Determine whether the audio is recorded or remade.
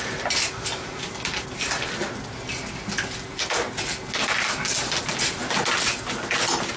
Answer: recorded